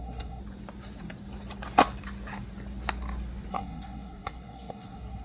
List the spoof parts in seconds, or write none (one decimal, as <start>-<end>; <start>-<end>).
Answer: 0.0-0.4; 3.5-5.2